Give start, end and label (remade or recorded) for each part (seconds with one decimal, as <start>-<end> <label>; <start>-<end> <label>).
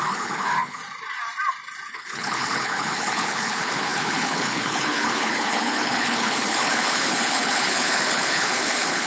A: 0.0-0.8 remade; 0.8-1.9 recorded; 1.9-9.1 remade